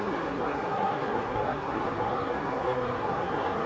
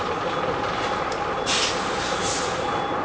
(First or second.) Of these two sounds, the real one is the second